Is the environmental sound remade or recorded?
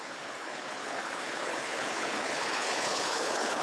remade